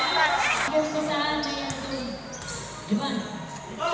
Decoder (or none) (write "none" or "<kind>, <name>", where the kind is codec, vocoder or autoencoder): none